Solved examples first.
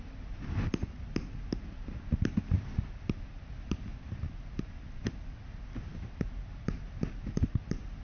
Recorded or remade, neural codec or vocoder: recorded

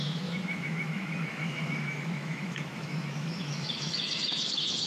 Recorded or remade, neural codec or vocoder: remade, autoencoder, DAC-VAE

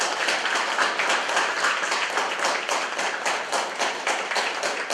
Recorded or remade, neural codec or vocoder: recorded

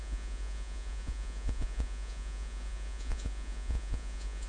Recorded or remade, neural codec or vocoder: remade, vocoder, Vocos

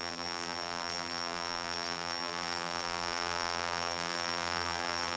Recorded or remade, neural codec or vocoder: remade, vocoder, BigVGAN v2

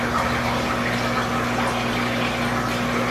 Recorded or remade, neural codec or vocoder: recorded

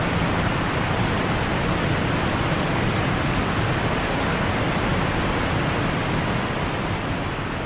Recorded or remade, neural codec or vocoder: recorded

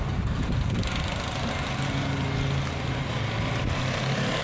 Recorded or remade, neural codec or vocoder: recorded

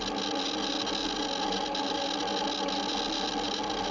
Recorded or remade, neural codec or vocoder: recorded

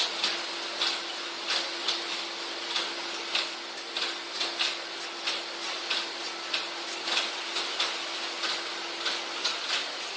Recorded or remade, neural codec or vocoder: recorded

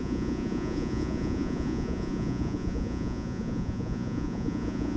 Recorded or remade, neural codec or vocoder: remade, vocoder, Vocos